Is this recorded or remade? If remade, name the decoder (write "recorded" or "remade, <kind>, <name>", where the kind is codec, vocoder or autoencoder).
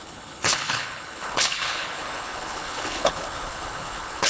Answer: remade, codec, HILCodec